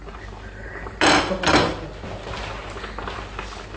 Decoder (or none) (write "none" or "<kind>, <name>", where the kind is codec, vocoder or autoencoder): none